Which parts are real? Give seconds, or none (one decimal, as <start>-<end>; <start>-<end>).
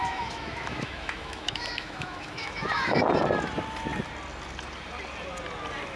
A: 3.0-6.0